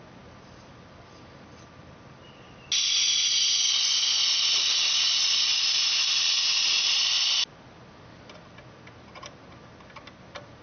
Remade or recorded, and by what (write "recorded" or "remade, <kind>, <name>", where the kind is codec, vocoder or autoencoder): recorded